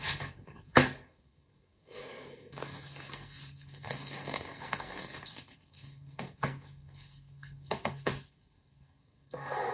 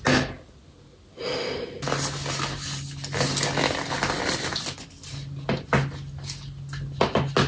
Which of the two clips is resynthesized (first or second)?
first